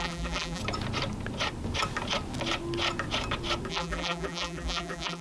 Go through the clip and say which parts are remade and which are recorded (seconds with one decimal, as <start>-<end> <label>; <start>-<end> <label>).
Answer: 0.0-0.6 remade; 0.6-3.7 recorded; 3.7-5.2 remade